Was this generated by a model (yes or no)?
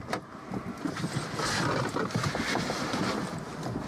no